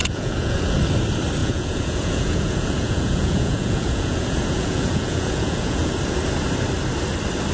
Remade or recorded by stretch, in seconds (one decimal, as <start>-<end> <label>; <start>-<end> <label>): 0.0-0.7 remade; 0.7-1.4 recorded; 1.4-5.9 remade; 5.9-7.5 recorded